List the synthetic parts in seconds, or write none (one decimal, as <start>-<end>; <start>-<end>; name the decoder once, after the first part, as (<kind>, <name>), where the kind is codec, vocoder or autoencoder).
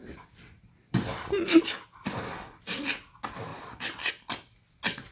0.0-2.2 (vocoder, BigVGAN v2); 3.5-4.1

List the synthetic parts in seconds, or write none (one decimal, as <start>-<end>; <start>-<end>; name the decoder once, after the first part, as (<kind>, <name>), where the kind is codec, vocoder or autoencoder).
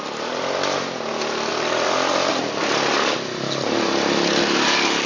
4.4-5.1 (codec, DAC)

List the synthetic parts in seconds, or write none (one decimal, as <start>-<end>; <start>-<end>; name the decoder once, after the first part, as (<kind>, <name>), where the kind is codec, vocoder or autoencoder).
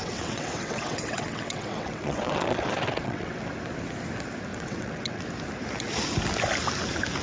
0.0-3.4 (vocoder, WaveNeXt); 4.5-5.2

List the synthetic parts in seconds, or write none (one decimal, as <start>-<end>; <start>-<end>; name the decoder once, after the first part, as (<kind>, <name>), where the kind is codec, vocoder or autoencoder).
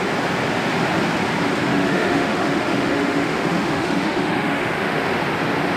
1.7-5.2 (autoencoder, DAC-VAE)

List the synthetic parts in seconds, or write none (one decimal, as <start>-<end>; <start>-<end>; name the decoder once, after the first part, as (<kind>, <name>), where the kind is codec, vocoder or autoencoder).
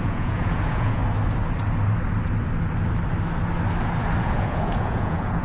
0.0-1.0 (vocoder, Vocos); 4.2-5.4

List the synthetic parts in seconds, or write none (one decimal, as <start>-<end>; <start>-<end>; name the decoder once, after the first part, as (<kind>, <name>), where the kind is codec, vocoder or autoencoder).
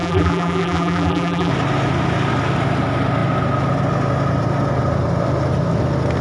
0.0-1.5 (vocoder, BigVGAN v2)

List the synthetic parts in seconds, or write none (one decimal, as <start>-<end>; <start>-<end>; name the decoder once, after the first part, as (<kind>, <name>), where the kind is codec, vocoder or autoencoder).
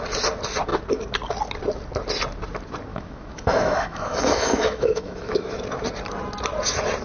2.9-5.6 (autoencoder, DAC-VAE)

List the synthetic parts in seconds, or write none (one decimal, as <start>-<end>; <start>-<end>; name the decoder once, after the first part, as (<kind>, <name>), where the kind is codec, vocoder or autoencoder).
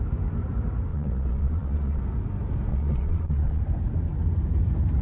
0.9-2.0 (vocoder, Vocos); 2.7-3.6